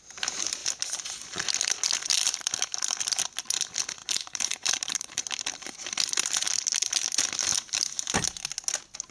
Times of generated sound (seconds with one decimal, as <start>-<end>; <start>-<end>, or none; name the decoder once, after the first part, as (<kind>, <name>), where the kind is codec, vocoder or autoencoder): 4.0-5.2 (vocoder, BigVGAN v2)